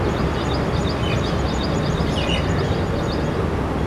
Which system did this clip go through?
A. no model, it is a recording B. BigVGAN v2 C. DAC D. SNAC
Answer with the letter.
A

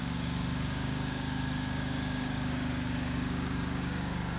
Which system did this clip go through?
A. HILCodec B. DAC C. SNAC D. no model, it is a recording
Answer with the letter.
B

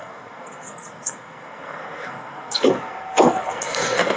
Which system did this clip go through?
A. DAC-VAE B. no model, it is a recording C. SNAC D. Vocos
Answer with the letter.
C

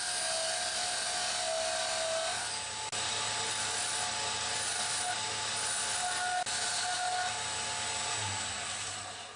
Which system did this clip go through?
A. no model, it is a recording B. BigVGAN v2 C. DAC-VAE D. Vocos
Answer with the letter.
A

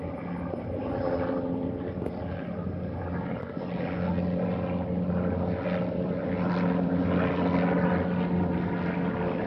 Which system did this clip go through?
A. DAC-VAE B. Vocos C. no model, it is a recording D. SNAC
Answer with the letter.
C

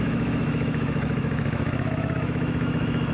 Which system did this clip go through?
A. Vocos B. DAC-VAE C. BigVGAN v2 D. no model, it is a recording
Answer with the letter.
B